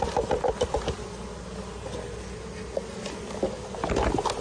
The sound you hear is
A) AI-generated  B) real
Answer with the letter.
B